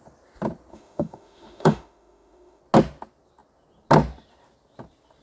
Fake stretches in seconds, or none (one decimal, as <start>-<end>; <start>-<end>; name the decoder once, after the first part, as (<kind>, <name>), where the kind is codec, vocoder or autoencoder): 0.7-2.6 (autoencoder, DAC-VAE)

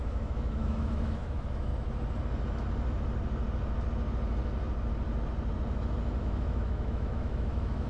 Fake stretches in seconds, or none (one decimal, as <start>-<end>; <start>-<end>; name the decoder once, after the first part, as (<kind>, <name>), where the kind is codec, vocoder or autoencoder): 0.0-1.7 (autoencoder, DAC-VAE); 6.2-7.9

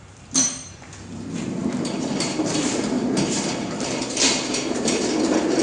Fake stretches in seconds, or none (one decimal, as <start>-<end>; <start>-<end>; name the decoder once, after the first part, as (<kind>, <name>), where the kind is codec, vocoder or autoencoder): 1.6-5.0 (vocoder, BigVGAN v2)